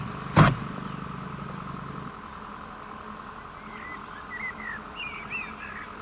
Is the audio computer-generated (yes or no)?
no